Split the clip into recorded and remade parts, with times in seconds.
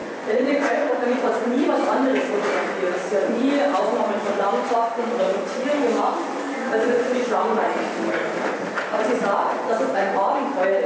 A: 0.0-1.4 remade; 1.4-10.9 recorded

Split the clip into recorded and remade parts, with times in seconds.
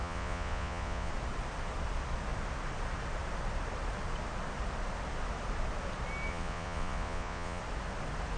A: 0.0-1.1 remade; 1.1-6.3 recorded; 6.3-7.6 remade; 7.6-8.4 recorded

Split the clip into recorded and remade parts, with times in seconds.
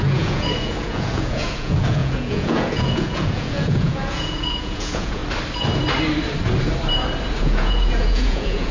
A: 0.0-5.2 remade; 5.2-7.4 recorded; 7.4-8.7 remade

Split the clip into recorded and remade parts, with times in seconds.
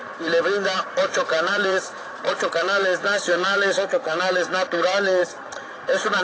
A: 0.0-1.5 recorded; 1.5-5.2 remade; 5.2-6.2 recorded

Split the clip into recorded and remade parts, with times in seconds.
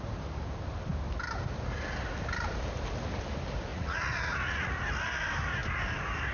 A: 0.0-3.7 recorded; 3.7-4.8 remade; 4.8-6.3 recorded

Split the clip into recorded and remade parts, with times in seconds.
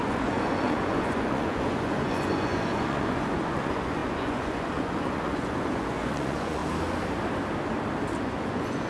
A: 0.0-6.6 remade; 6.6-8.2 recorded; 8.2-8.9 remade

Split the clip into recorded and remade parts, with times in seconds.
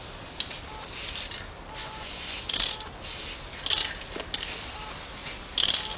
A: 0.0-1.8 recorded; 1.8-2.4 remade; 2.4-6.0 recorded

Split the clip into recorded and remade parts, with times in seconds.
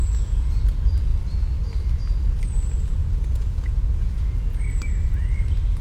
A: 0.0-0.6 remade; 0.6-3.0 recorded; 3.0-4.6 remade; 4.6-5.8 recorded